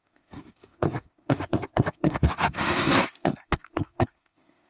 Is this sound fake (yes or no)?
yes